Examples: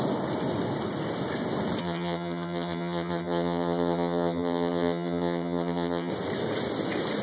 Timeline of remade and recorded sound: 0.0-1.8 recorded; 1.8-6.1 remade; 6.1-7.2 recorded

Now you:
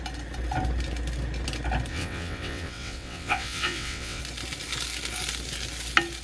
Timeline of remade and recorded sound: 0.0-1.9 recorded; 1.9-4.2 remade; 4.2-6.2 recorded

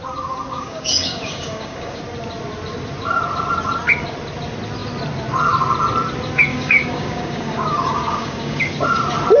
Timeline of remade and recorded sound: 0.0-0.5 recorded; 0.5-2.0 remade; 2.0-6.5 recorded; 6.5-8.6 remade; 8.6-9.4 recorded

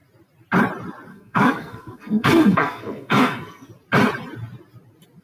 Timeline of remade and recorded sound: 0.0-1.1 recorded; 1.1-3.7 remade; 3.7-5.2 recorded

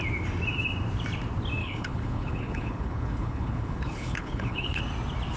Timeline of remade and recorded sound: 0.0-1.6 recorded; 1.6-4.8 remade; 4.8-5.4 recorded

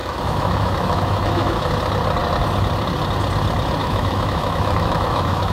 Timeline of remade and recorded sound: 0.0-1.7 remade; 1.7-3.8 recorded; 3.8-5.5 remade

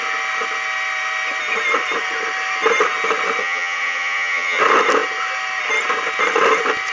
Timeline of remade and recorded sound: 0.0-3.4 recorded; 3.4-4.6 remade; 4.6-6.9 recorded